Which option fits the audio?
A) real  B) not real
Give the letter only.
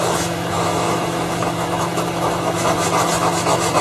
B